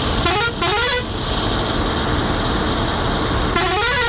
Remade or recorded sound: recorded